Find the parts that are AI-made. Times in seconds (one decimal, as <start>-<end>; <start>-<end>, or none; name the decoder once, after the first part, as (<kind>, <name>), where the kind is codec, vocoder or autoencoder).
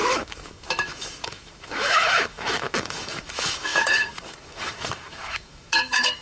0.0-6.2 (autoencoder, DAC-VAE)